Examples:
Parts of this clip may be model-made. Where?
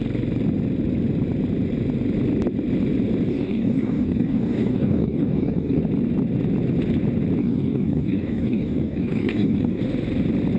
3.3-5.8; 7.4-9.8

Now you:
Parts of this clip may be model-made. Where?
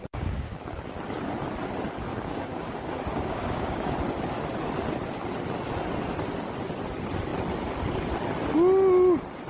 0.0-0.6; 2.1-3.9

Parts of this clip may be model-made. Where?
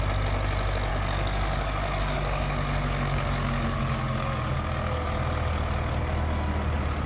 0.9-5.1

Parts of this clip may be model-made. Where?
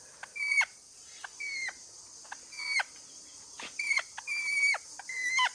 none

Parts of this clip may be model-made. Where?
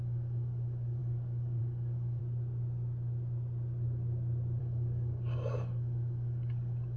0.0-2.2; 4.6-7.0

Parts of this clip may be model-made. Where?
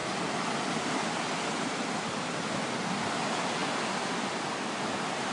none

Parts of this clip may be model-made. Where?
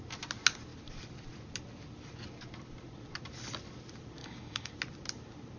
4.2-4.7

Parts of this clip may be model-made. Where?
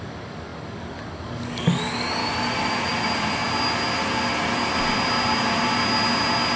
0.0-2.2